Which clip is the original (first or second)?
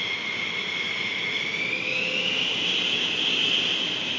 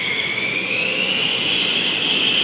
first